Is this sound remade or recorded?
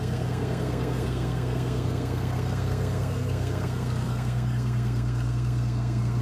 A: remade